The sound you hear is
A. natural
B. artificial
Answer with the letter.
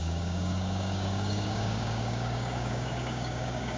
B